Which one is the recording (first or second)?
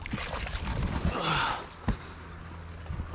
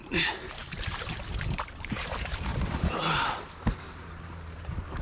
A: first